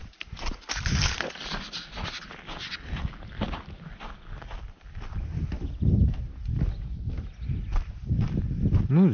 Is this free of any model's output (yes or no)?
yes